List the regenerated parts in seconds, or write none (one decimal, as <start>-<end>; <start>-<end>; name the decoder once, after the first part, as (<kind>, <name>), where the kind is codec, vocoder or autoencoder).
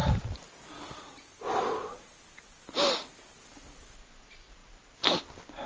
none